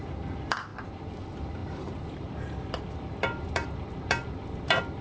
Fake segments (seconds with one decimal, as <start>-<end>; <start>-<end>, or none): 0.0-0.7; 1.2-5.0